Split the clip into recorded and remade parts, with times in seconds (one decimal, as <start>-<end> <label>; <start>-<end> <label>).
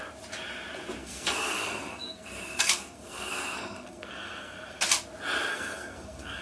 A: 0.0-1.0 recorded; 1.0-4.8 remade; 4.8-5.5 recorded; 5.5-6.4 remade